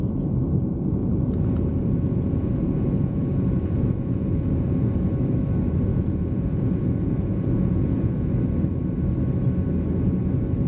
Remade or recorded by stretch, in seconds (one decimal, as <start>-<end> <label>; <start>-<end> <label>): 0.0-1.0 recorded; 1.0-5.1 remade; 5.1-5.9 recorded; 5.9-8.3 remade; 8.3-10.7 recorded